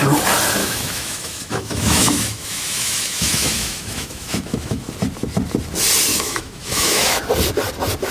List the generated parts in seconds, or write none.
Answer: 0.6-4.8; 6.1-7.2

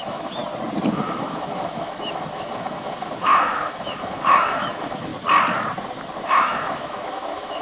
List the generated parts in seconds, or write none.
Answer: 0.0-0.4; 0.9-5.1; 6.3-7.6

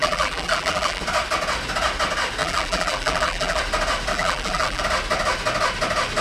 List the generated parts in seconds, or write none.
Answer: 0.0-1.0; 2.4-3.6; 4.1-4.8

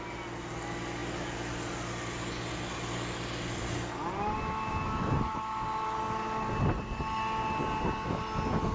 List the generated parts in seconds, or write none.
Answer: none

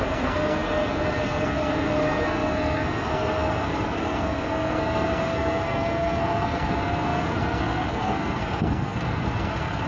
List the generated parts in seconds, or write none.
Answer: 0.0-9.9